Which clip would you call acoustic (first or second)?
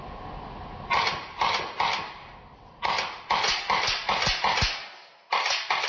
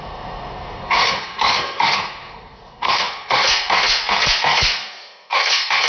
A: first